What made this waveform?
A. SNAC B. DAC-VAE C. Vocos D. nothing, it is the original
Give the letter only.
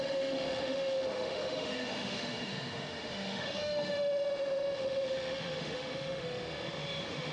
B